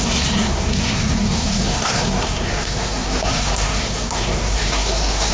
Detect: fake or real fake